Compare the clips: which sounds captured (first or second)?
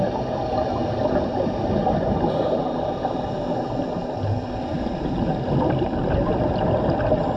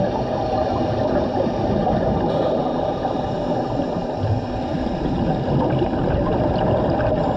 first